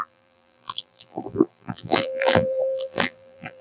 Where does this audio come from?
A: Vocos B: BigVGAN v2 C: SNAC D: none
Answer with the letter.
B